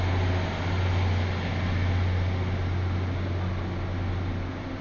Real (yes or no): yes